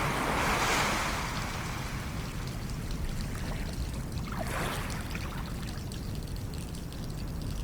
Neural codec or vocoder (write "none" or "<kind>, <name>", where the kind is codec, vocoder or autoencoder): none